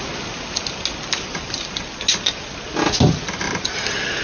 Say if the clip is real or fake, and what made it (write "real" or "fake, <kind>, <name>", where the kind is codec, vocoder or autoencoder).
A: real